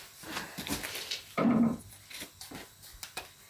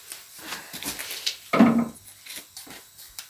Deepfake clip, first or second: first